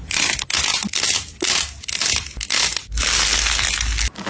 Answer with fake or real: real